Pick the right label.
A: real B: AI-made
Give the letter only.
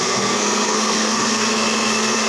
B